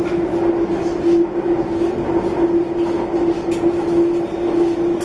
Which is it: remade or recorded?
recorded